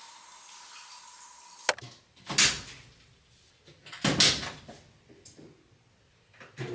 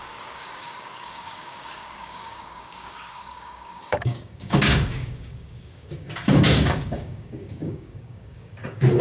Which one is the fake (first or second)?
second